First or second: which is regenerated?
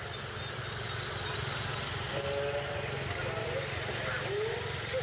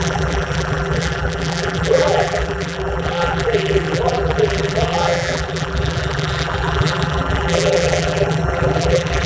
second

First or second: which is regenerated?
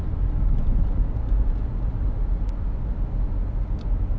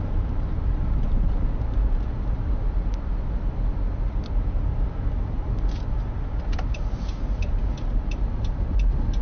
second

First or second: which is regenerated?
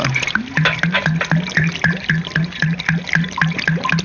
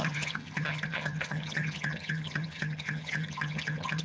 second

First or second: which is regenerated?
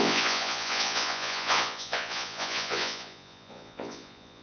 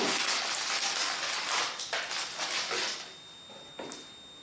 first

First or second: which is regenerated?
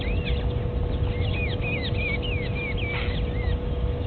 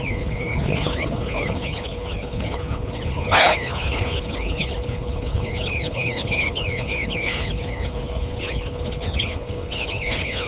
second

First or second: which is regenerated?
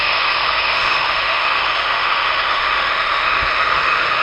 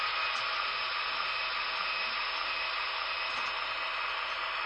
first